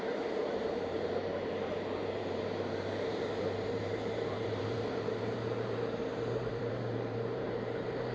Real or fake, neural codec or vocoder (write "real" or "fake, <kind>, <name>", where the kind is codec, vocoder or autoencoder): fake, vocoder, BigVGAN v2